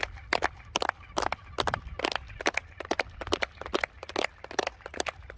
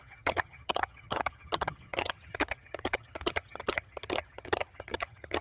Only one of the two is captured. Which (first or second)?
first